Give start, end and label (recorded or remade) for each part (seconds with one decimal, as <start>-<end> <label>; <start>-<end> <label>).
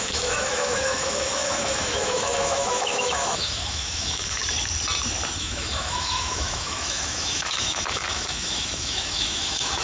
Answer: 0.0-4.4 remade; 4.4-5.4 recorded; 5.4-9.8 remade